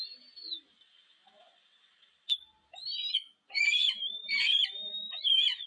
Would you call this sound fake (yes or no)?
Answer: no